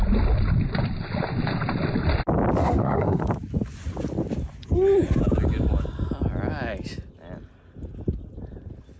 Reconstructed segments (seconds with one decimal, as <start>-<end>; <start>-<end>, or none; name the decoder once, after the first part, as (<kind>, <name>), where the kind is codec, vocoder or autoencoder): 2.6-3.2 (codec, SNAC)